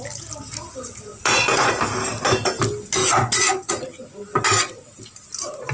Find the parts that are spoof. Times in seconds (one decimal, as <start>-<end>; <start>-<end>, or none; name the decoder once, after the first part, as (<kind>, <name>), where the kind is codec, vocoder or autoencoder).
1.1-1.7 (vocoder, Vocos); 3.0-3.7